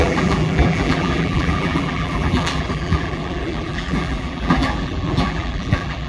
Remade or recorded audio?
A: remade